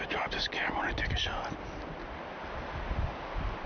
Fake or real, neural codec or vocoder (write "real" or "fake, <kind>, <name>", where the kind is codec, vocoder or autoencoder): real